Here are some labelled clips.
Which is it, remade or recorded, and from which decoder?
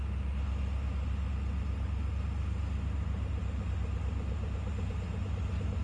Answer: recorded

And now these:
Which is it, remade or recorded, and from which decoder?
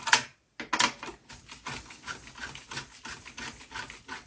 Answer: recorded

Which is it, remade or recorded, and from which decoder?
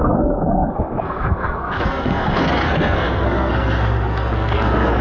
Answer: remade, codec, SNAC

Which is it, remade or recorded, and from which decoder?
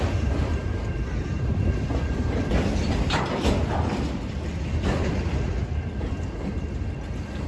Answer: remade, vocoder, BigVGAN v2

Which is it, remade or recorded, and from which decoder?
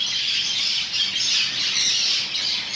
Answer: recorded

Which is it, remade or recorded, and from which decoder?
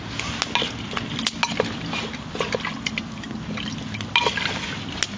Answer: recorded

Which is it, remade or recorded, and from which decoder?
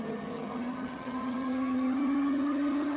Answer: remade, vocoder, HiFi-GAN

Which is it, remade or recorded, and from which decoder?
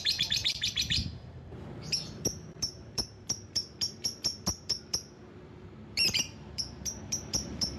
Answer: remade, vocoder, BigVGAN v2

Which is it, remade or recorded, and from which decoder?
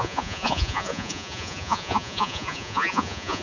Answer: remade, vocoder, Vocos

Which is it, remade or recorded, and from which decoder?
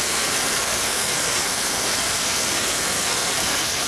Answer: remade, codec, SNAC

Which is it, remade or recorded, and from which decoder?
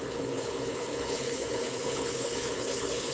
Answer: remade, codec, HILCodec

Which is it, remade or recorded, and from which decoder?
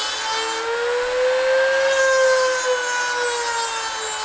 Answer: recorded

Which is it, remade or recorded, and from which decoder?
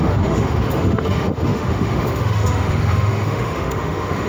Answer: remade, autoencoder, DAC-VAE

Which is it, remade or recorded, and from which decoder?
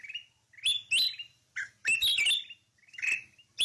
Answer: recorded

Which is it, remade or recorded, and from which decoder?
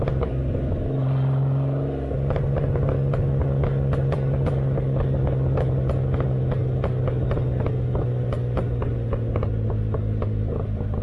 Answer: recorded